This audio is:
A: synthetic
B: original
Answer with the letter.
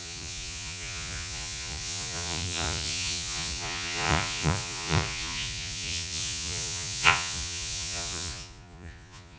A